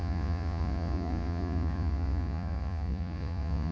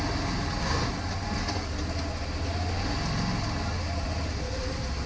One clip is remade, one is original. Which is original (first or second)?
second